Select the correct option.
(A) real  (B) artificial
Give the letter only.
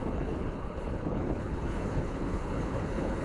B